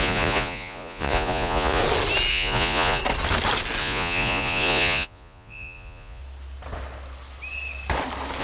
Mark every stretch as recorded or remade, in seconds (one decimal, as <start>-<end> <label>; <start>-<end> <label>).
0.0-1.8 remade; 1.8-2.3 recorded; 2.3-3.0 remade; 3.0-3.8 recorded; 3.8-6.2 remade; 6.2-8.4 recorded